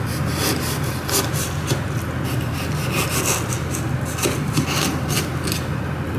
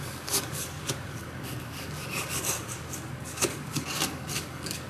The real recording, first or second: first